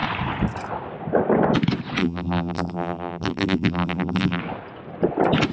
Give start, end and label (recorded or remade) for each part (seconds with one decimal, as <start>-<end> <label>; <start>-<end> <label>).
0.0-2.0 recorded; 2.0-4.4 remade; 4.4-5.5 recorded